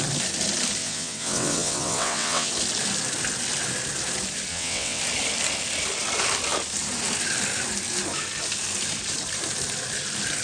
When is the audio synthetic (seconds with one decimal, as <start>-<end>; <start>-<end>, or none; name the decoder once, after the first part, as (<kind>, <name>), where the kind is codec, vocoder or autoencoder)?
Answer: 0.8-2.5 (vocoder, WaveNeXt); 4.5-5.0

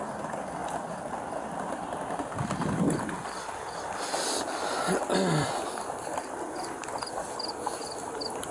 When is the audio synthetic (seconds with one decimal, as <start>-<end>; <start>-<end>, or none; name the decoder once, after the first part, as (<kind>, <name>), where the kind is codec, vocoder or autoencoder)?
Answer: none